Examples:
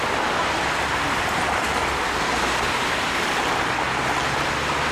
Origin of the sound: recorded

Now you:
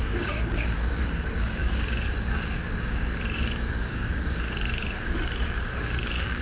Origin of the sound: remade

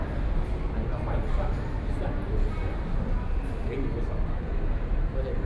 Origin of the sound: recorded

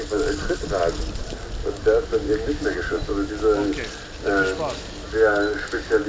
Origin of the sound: recorded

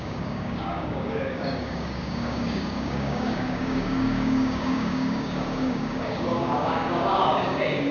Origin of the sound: remade